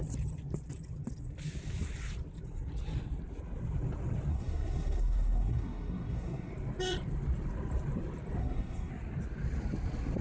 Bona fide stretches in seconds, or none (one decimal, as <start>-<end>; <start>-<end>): 0.0-4.3; 6.5-8.4; 8.9-10.2